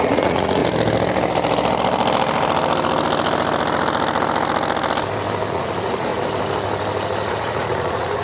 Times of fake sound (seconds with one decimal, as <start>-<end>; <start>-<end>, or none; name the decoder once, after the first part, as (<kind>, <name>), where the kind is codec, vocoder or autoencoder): 0.0-0.6 (vocoder, Vocos); 5.5-6.1; 7.3-8.2